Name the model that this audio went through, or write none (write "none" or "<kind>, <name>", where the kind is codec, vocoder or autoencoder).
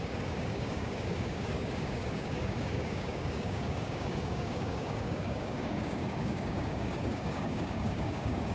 codec, DAC